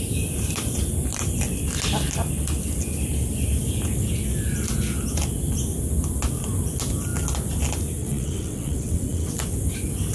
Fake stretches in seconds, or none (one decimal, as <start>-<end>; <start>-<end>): 8.0-9.3